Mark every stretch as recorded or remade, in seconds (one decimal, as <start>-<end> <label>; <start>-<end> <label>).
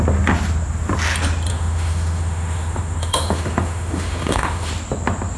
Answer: 0.0-1.5 recorded; 1.5-4.7 remade; 4.7-5.4 recorded